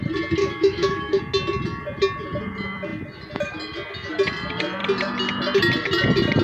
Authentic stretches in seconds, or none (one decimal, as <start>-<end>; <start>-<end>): 0.0-0.4; 1.2-6.4